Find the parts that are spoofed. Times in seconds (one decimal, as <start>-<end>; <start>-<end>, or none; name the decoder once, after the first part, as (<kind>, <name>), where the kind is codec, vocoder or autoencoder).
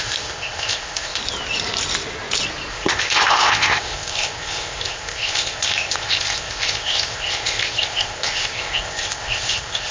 0.0-1.2 (codec, ZipCodec); 2.7-9.9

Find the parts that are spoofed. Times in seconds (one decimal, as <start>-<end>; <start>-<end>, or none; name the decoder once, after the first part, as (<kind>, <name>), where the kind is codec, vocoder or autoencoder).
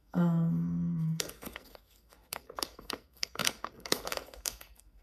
0.0-5.0 (codec, SNAC)